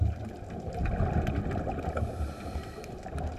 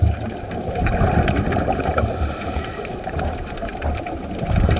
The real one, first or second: first